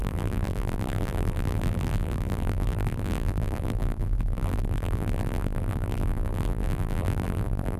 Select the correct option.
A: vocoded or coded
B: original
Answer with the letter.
A